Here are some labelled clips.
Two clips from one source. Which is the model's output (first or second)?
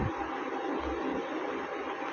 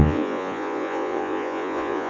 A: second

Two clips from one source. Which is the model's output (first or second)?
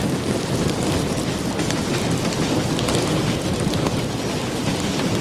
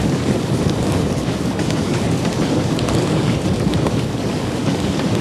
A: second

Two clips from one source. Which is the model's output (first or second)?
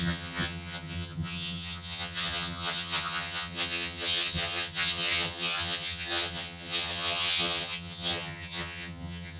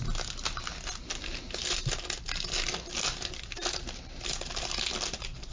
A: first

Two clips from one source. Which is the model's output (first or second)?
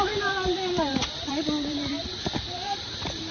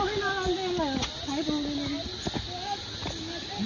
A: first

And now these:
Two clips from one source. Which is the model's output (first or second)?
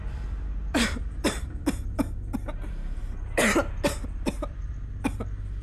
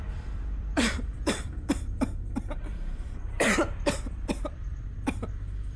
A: second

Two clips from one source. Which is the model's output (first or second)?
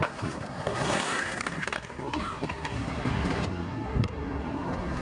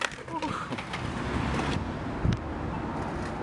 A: first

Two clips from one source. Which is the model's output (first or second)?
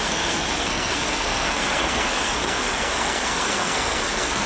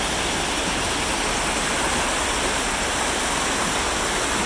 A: first